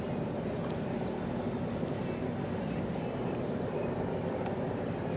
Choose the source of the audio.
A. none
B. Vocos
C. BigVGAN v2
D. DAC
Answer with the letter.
C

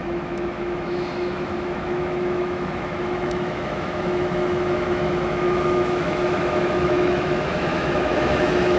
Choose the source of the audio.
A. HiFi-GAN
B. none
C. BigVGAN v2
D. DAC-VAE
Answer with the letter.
D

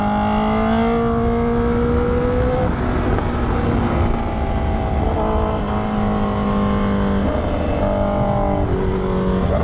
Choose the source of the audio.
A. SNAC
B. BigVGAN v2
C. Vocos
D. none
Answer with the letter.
D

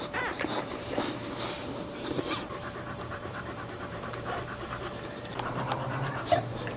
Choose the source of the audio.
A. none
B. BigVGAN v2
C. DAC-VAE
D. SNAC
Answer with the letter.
B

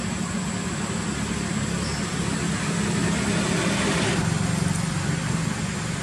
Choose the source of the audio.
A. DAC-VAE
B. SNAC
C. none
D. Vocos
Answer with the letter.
C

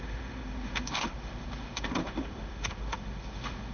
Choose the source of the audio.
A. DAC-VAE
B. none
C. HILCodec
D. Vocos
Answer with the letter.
A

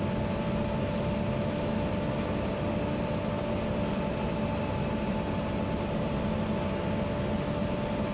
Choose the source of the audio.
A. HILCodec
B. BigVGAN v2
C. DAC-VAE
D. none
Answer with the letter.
D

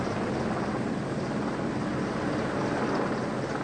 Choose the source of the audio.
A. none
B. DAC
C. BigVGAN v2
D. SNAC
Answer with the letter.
A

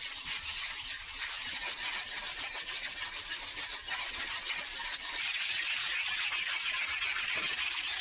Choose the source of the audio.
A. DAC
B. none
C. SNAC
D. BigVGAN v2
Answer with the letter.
B